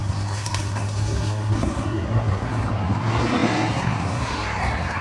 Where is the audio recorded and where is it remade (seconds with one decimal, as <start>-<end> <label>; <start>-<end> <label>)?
0.0-5.0 remade